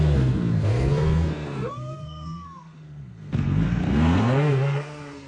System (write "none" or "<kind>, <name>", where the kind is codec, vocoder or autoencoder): codec, SNAC